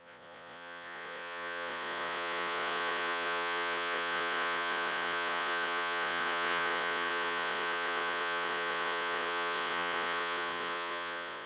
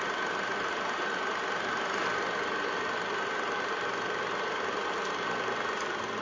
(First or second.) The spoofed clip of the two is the first